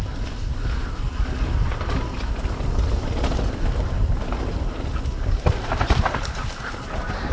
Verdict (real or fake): real